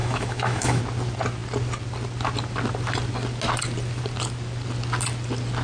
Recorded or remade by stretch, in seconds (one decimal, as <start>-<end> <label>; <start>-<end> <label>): 0.0-0.8 remade; 0.8-5.6 recorded